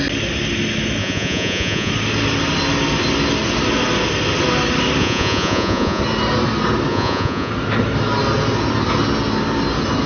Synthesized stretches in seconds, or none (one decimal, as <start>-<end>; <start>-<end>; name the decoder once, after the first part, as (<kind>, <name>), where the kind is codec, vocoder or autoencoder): 1.0-1.9 (vocoder, Vocos); 5.0-6.0; 6.9-7.5